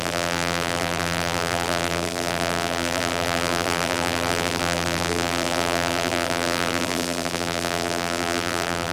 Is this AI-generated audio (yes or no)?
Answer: yes